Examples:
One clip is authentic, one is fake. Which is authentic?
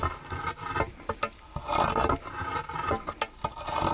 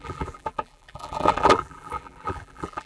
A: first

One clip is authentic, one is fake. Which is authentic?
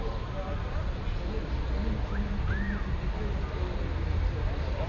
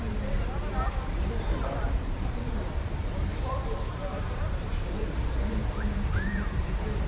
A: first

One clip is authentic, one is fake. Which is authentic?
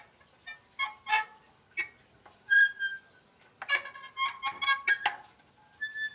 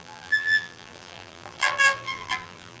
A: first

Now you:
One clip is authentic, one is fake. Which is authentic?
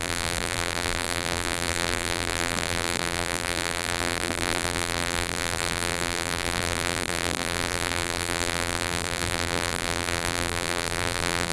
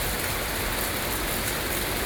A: second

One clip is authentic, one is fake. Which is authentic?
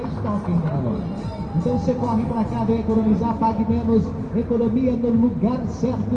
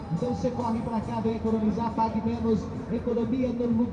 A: first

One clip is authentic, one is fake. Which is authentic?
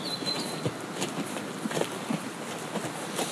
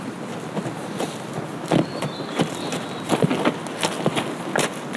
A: second